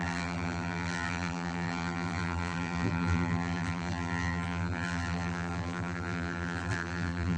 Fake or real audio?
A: fake